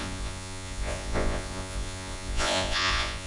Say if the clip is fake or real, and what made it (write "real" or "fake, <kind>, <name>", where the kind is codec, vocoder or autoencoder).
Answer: fake, vocoder, Vocos